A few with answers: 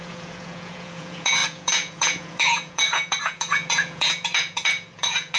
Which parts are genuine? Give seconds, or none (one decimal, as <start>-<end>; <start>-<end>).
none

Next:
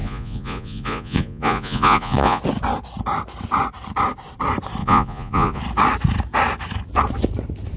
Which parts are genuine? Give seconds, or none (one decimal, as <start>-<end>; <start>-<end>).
2.4-4.8; 5.6-7.8

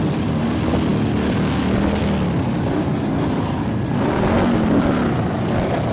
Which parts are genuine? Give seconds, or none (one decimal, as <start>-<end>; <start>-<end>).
0.0-5.9

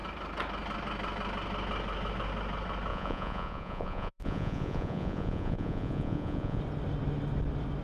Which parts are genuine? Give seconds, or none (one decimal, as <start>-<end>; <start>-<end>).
0.0-2.9; 6.6-7.8